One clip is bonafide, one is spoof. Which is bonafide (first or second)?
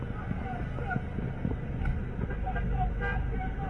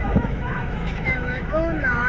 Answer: first